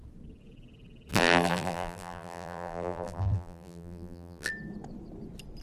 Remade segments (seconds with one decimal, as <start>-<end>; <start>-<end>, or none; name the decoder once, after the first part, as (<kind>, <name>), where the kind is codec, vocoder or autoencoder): 1.1-4.5 (vocoder, BigVGAN v2)